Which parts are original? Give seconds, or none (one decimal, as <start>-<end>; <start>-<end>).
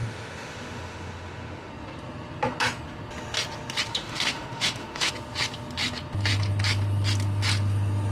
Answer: 1.7-3.9; 5.1-8.1